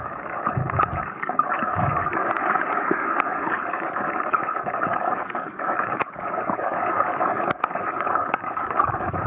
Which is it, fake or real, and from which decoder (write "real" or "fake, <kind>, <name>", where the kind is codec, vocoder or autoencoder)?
fake, codec, DAC